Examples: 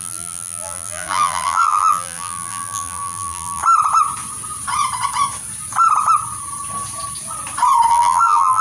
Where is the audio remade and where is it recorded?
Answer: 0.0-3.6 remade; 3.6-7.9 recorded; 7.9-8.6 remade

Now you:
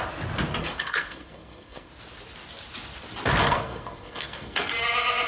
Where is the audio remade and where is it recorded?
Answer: 0.0-0.6 recorded; 0.6-1.9 remade; 1.9-3.4 recorded; 3.4-4.7 remade; 4.7-5.3 recorded

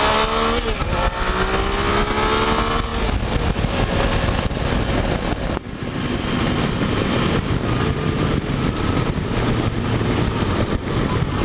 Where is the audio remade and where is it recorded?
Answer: 0.0-11.4 recorded